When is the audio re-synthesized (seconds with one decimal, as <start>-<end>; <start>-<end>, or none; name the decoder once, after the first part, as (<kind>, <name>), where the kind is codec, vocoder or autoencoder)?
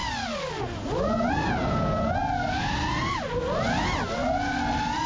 none